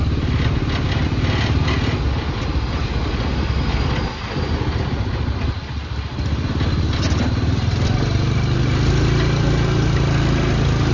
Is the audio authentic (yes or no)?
yes